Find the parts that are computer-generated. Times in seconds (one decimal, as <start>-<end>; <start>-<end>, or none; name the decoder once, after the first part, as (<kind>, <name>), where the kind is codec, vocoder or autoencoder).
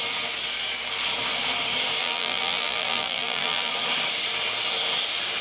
2.0-3.7 (vocoder, BigVGAN v2)